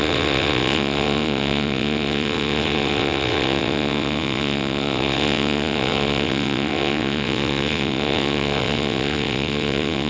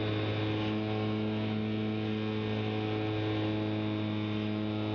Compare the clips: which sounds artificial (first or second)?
first